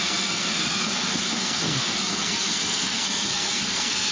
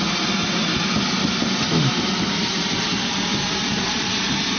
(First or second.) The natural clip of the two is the second